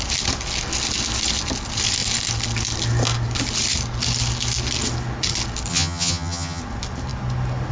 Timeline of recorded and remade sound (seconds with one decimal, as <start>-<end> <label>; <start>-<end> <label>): 0.0-5.7 recorded; 5.7-6.6 remade; 6.6-7.7 recorded